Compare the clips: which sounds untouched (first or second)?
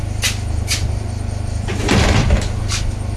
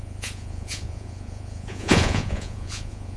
first